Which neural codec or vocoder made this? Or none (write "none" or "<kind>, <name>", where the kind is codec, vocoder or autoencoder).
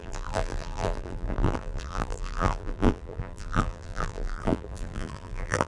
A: vocoder, BigVGAN v2